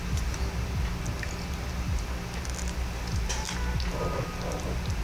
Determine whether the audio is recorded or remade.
recorded